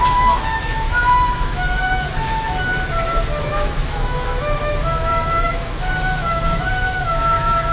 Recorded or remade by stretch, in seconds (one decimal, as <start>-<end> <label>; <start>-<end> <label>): 0.0-2.7 remade; 2.7-3.5 recorded; 3.5-7.7 remade